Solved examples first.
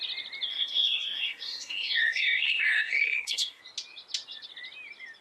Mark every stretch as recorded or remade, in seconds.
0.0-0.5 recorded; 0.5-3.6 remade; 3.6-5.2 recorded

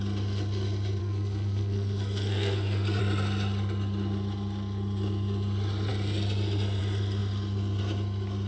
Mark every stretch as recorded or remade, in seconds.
0.0-1.0 recorded; 1.0-3.0 remade; 3.0-8.5 recorded

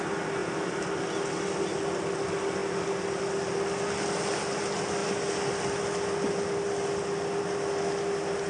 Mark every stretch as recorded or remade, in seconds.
0.0-8.5 recorded

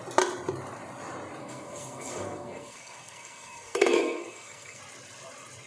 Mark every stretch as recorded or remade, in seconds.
0.0-1.4 recorded; 1.4-4.8 remade; 4.8-5.7 recorded

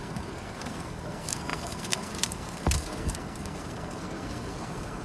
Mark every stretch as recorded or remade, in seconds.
0.0-5.0 remade